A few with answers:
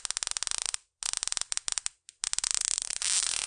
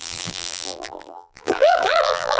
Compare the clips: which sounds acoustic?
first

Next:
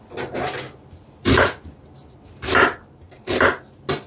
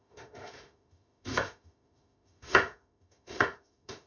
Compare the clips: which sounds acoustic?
first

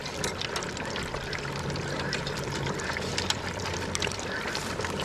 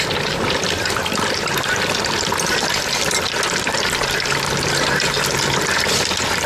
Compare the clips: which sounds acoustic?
second